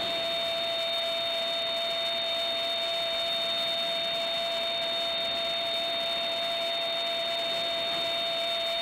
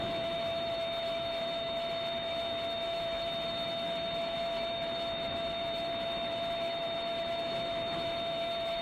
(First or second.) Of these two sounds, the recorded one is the first